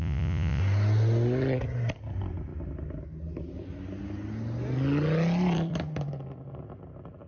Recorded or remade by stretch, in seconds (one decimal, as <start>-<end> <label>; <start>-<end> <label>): 0.0-0.6 remade; 0.6-7.3 recorded